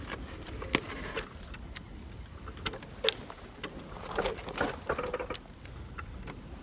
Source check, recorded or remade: recorded